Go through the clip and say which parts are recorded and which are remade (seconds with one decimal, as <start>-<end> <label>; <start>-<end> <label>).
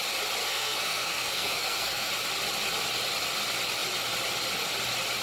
0.0-0.4 recorded; 0.4-2.1 remade; 2.1-5.2 recorded